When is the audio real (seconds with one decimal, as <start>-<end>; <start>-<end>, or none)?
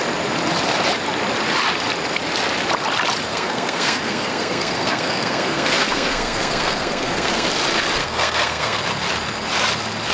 0.0-3.3; 7.5-8.0; 8.8-10.1